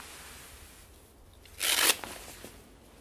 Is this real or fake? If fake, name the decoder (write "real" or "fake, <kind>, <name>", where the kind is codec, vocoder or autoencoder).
real